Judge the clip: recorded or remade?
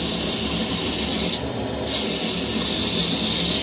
recorded